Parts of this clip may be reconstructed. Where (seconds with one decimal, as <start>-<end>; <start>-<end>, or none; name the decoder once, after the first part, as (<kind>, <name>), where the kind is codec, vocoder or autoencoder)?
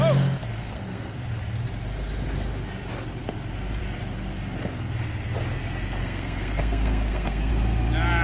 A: 0.5-1.2 (codec, SNAC); 6.0-7.5